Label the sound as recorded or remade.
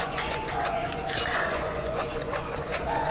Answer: remade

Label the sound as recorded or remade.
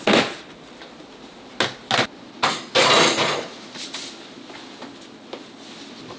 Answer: recorded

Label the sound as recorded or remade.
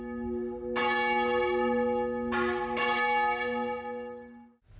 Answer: recorded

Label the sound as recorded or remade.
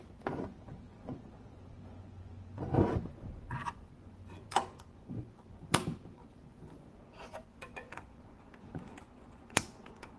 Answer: remade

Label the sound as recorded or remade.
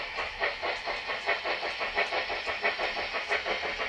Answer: recorded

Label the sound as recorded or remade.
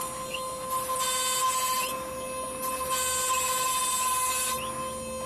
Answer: recorded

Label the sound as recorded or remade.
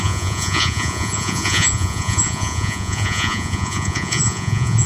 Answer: remade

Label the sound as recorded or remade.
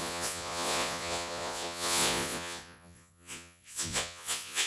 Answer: remade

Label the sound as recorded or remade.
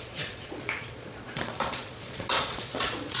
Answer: remade